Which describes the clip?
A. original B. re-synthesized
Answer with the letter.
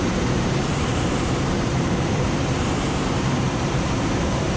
B